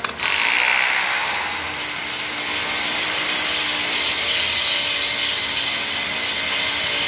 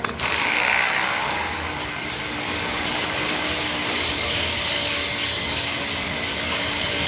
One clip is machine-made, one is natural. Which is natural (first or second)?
first